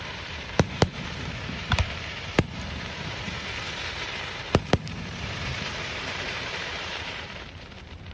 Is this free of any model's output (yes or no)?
no